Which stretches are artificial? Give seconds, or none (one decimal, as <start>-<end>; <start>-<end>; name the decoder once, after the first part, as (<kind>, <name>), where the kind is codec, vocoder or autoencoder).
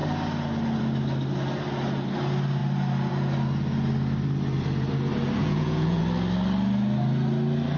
5.4-6.0 (vocoder, Vocos)